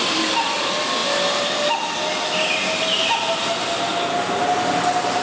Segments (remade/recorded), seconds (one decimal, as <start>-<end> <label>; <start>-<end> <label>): 0.0-5.2 recorded